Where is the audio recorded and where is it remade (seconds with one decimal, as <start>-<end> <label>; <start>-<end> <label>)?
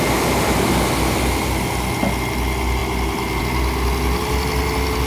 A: 0.0-5.1 recorded